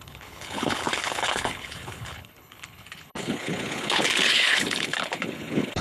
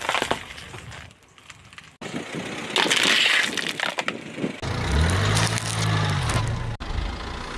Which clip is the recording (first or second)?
second